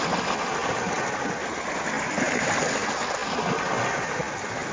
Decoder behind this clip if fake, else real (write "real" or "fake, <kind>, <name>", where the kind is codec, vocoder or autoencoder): real